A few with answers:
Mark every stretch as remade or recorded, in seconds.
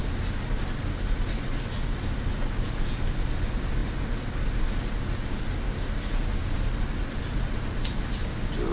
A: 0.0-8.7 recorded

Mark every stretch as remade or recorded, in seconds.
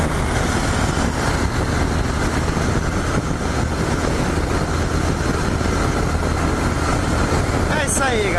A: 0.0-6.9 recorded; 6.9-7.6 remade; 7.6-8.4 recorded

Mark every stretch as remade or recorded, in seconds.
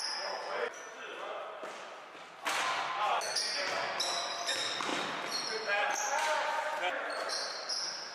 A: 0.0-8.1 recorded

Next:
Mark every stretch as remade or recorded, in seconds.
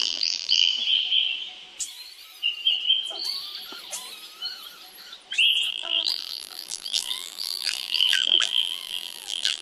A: 0.0-0.7 remade; 0.7-5.7 recorded; 5.7-9.6 remade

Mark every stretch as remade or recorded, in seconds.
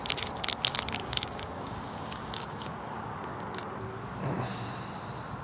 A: 0.0-1.0 recorded; 1.0-3.2 remade; 3.2-5.4 recorded